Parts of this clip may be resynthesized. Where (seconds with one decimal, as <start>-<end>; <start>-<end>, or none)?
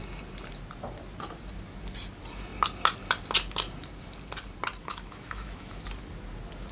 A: 4.8-5.8